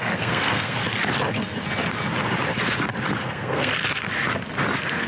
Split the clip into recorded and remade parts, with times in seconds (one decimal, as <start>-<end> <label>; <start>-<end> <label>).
0.0-0.8 remade; 0.8-3.2 recorded; 3.2-3.7 remade; 3.7-5.1 recorded